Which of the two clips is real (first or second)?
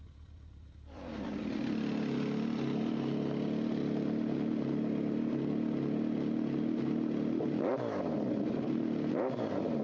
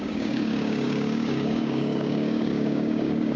first